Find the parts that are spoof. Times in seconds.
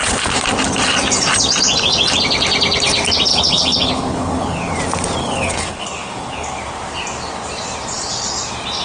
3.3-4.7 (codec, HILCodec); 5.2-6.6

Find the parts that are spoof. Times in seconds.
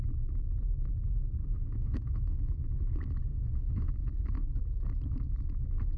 1.4-2.5 (autoencoder, DAC-VAE); 3.3-3.9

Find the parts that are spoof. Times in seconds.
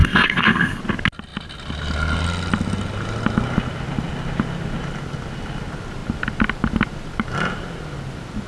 0.0-0.8 (codec, SNAC)